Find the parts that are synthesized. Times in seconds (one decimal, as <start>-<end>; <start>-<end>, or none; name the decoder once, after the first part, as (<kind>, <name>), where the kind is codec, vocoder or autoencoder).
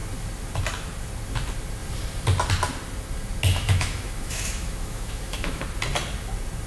3.5-5.6 (autoencoder, DAC-VAE)